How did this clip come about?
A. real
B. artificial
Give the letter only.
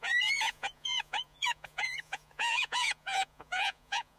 B